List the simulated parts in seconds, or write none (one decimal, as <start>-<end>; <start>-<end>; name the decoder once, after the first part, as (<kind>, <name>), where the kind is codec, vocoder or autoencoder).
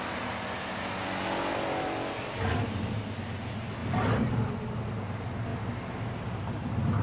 3.8-4.5 (vocoder, BigVGAN v2)